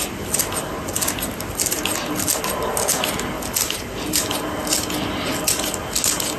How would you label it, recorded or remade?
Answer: recorded